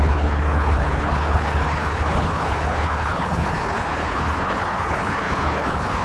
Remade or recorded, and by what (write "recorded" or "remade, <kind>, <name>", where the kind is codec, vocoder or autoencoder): remade, codec, HILCodec